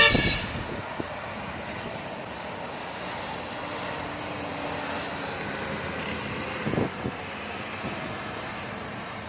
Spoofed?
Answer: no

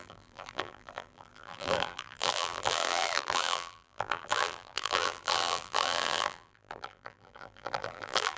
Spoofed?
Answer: yes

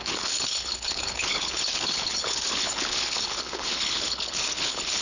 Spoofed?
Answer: yes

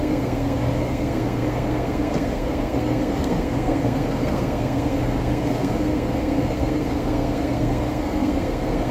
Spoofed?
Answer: yes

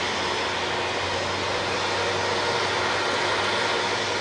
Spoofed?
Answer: no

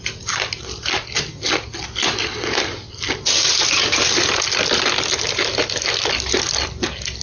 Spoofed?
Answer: no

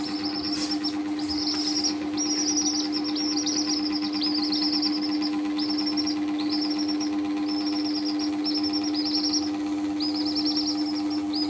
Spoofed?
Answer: no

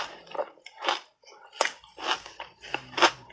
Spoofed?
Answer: no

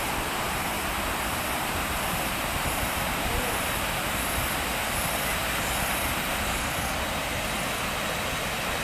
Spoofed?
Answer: no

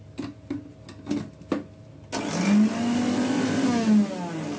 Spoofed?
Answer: no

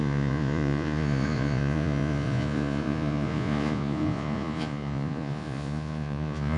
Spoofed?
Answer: yes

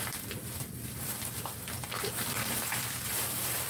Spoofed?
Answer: yes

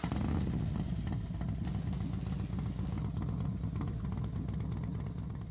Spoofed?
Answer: no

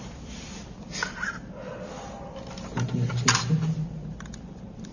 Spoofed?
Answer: no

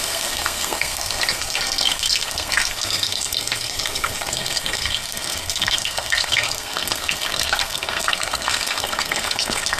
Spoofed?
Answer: yes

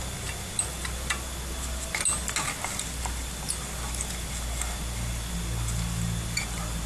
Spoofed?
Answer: no